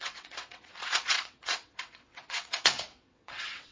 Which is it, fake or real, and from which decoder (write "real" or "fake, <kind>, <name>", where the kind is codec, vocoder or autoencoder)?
fake, vocoder, WaveNeXt